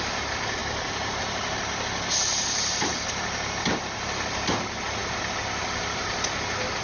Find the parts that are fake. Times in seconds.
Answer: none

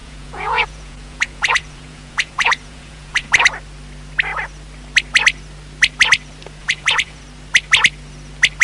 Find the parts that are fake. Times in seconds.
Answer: 0.0-3.3 (vocoder, Vocos); 6.6-7.2

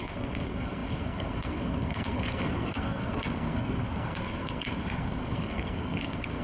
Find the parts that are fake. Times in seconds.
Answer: 0.0-6.4 (codec, SNAC)

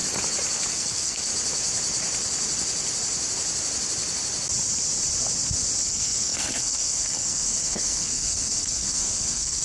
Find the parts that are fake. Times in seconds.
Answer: 0.7-1.3 (codec, SNAC); 5.8-9.6

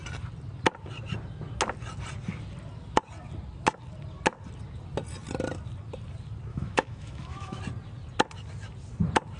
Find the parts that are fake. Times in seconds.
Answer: 6.5-7.6 (autoencoder, DAC-VAE)

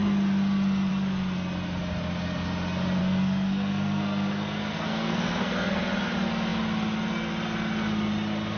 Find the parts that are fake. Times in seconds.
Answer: 3.0-5.9 (codec, SNAC)

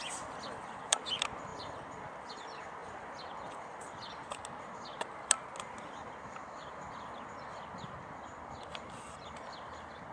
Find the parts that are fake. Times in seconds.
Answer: 1.5-2.2 (vocoder, BigVGAN v2)